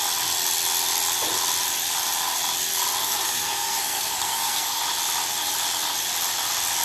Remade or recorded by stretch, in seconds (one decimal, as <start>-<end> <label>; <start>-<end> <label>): 0.0-3.0 recorded; 3.0-4.8 remade; 4.8-6.8 recorded

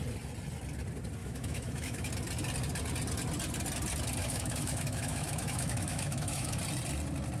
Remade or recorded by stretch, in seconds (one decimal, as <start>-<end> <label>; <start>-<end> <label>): 0.0-1.2 recorded; 1.2-2.1 remade; 2.1-4.2 recorded; 4.2-6.6 remade; 6.6-7.4 recorded

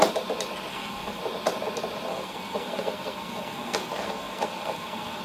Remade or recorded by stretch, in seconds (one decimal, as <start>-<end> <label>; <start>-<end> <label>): 0.0-0.7 recorded; 0.7-1.2 remade; 1.2-2.1 recorded; 2.1-5.2 remade

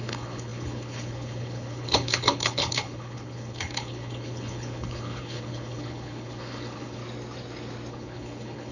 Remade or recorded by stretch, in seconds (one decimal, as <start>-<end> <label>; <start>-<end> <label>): 0.0-7.0 remade; 7.0-7.9 recorded; 7.9-8.7 remade

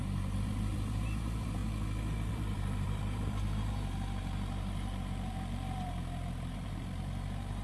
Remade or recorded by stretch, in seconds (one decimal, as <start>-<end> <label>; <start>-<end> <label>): 0.0-1.6 remade; 1.6-2.3 recorded; 2.3-7.6 remade

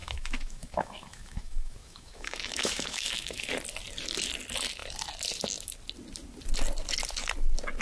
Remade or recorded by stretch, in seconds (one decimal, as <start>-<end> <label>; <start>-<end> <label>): 0.0-3.5 remade; 3.5-7.8 recorded